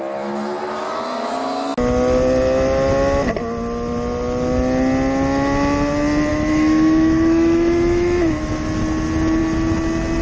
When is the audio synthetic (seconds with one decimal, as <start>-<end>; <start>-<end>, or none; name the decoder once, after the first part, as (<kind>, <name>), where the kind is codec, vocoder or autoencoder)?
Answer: 6.3-8.5 (autoencoder, DAC-VAE)